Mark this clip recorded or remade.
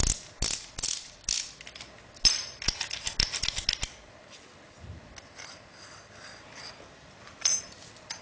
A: recorded